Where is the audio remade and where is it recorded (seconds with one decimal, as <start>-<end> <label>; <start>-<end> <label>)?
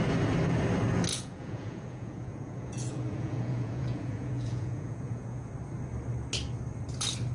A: 0.0-1.1 recorded; 1.1-5.5 remade; 5.5-7.3 recorded